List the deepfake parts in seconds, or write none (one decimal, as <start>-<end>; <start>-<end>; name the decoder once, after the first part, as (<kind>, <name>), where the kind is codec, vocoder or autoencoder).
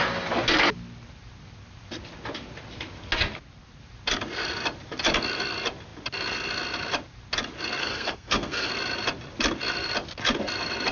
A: 7.8-8.7 (codec, SNAC)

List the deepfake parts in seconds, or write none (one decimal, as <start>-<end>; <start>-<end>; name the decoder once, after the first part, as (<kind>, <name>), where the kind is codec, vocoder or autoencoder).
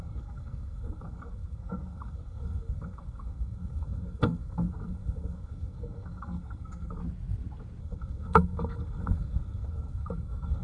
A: 0.0-7.0 (codec, SNAC); 7.8-10.6